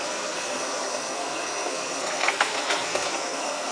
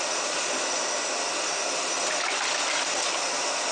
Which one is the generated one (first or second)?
first